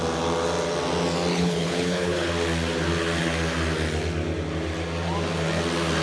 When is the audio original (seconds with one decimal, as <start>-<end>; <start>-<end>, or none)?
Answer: 0.0-1.3; 2.3-6.0